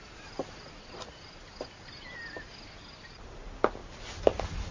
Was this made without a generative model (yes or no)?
yes